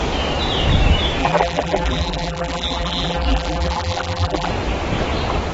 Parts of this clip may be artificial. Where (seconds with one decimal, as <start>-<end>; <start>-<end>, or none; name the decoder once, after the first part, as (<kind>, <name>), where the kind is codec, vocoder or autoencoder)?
1.2-4.5 (vocoder, BigVGAN v2)